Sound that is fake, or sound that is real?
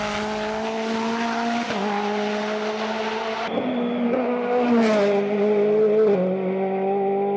real